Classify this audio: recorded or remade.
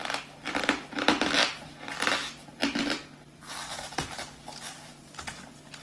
recorded